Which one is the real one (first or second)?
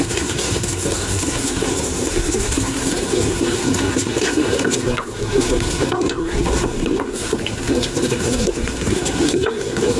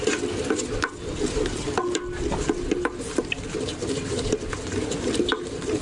second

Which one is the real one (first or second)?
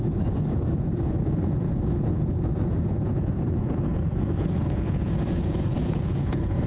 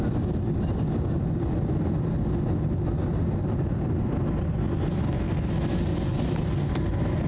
second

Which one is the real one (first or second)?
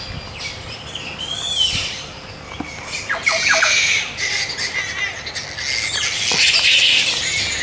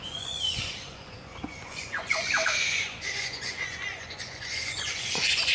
first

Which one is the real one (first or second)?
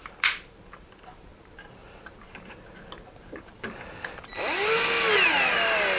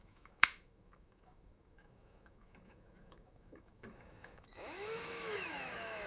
first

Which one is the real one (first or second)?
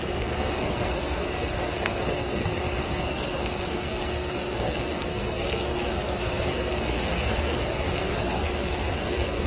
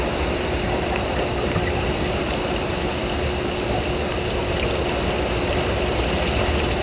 second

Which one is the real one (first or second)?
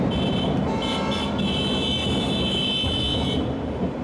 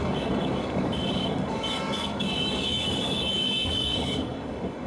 first